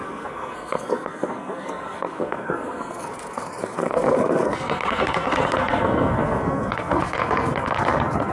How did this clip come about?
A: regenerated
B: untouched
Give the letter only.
A